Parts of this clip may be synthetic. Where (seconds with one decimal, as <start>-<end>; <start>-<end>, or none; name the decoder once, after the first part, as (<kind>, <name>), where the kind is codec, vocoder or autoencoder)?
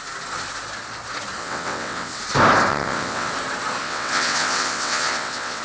1.4-2.2 (vocoder, WaveNeXt); 2.7-3.3; 3.8-5.6